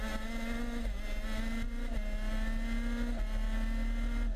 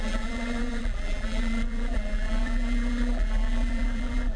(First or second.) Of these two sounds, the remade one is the second